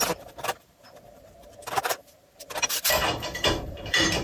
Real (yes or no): no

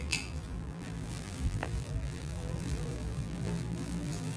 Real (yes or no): no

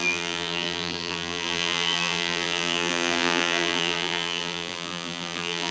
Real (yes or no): no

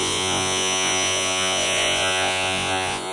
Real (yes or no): no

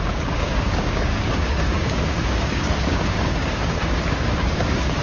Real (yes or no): no